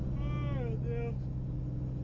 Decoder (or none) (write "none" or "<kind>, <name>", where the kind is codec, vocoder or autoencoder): none